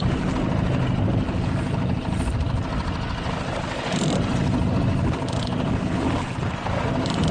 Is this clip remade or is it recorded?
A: recorded